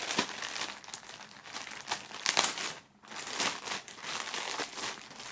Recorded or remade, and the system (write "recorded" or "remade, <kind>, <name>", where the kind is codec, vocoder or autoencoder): recorded